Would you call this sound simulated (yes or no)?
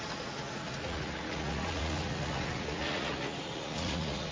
yes